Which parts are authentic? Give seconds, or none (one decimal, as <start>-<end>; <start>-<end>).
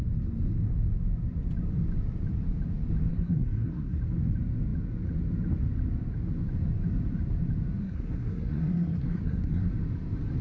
0.0-3.1; 4.0-7.8; 9.7-10.4